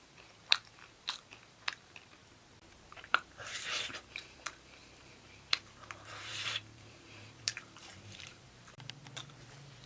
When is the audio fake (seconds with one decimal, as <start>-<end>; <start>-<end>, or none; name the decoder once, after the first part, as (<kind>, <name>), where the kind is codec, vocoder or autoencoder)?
0.0-2.2 (vocoder, BigVGAN v2); 2.9-9.0